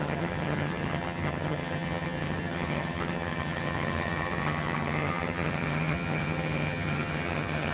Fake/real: fake